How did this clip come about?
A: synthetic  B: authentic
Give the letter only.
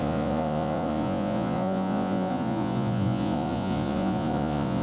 A